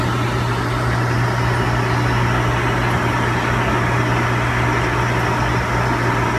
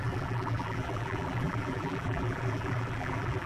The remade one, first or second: second